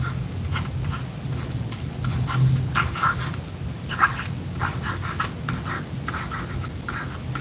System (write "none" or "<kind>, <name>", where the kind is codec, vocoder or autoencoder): none